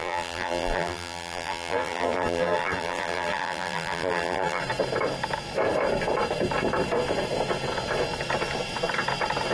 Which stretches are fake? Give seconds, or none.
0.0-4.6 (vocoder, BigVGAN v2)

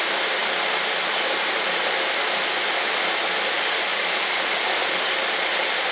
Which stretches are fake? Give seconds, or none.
none

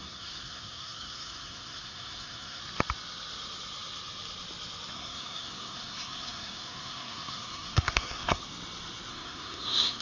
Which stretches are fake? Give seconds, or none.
0.0-2.6 (codec, SNAC); 4.9-8.4; 9.1-10.0